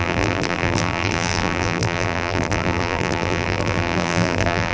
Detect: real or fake fake